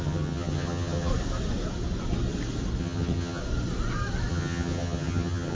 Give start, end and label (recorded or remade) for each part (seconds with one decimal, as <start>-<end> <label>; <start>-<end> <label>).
0.0-1.1 remade; 1.1-2.8 recorded; 2.8-3.4 remade; 3.4-4.3 recorded; 4.3-5.5 remade